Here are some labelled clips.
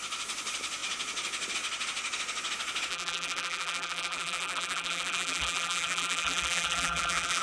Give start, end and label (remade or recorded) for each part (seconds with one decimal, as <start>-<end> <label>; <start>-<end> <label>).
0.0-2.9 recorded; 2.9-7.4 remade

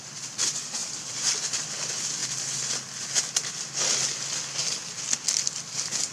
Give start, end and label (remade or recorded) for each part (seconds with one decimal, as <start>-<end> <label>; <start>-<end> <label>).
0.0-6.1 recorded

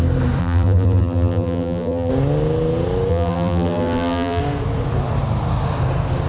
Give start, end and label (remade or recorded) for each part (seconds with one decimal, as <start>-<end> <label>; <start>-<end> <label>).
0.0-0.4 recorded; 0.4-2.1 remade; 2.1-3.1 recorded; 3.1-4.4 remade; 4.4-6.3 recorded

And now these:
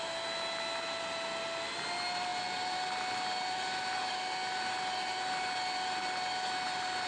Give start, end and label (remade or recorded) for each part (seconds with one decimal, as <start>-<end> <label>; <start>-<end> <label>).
0.0-7.1 recorded

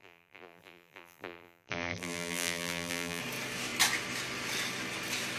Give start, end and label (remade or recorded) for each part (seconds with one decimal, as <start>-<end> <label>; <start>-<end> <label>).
0.0-3.2 remade; 3.2-5.4 recorded

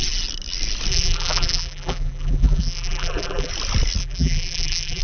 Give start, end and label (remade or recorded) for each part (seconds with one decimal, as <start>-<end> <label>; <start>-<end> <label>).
0.0-0.9 recorded; 0.9-3.5 remade; 3.5-4.0 recorded; 4.0-5.0 remade

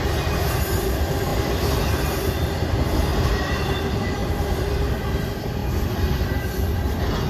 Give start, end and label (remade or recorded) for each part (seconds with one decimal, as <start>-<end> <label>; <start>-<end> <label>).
0.0-1.3 recorded; 1.3-1.9 remade; 1.9-3.1 recorded; 3.1-3.8 remade; 3.8-4.2 recorded; 4.2-5.0 remade; 5.0-5.6 recorded; 5.6-6.2 remade; 6.2-7.3 recorded